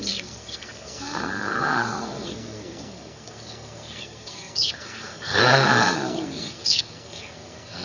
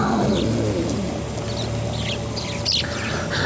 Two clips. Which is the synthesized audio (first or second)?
first